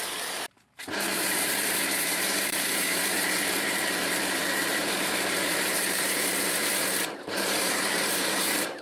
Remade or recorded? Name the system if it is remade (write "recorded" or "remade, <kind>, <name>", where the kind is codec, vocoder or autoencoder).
remade, vocoder, BigVGAN v2